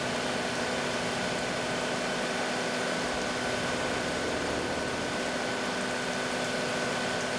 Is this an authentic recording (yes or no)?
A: yes